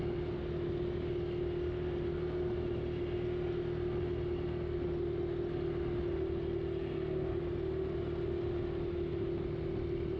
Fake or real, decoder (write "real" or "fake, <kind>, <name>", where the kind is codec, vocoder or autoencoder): real